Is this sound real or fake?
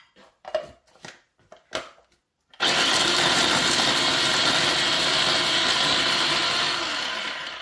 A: real